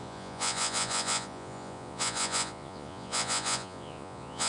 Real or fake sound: fake